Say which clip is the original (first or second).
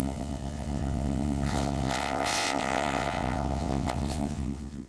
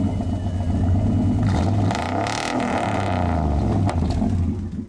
second